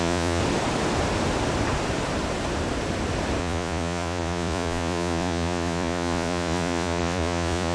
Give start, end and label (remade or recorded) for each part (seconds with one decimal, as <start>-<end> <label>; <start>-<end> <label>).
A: 0.0-0.4 remade; 0.4-3.4 recorded; 3.4-7.7 remade